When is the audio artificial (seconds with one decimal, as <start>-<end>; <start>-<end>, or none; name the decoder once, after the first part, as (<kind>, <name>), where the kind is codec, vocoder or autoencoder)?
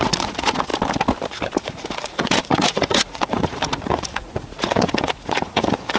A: 0.0-0.7 (vocoder, Vocos); 1.6-6.0